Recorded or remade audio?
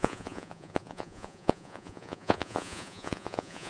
remade